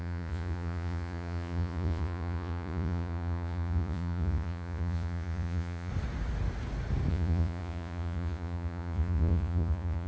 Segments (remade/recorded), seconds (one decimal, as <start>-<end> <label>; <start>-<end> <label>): 0.0-5.9 remade; 5.9-7.1 recorded; 7.1-10.1 remade